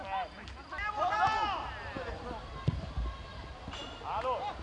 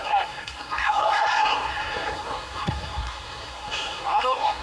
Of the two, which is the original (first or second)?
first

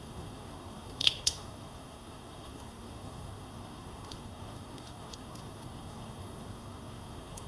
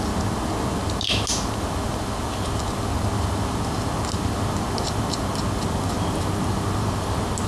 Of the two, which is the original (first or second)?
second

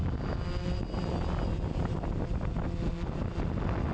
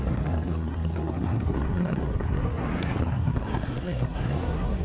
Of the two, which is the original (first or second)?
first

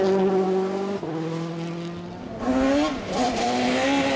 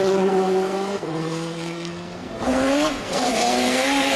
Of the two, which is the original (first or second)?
first